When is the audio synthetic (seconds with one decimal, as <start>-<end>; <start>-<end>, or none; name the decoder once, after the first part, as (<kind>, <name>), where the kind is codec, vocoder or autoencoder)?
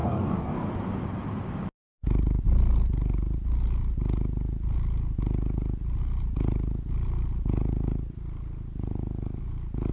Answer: 0.0-0.6 (codec, DAC)